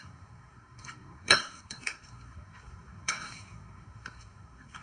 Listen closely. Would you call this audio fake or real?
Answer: fake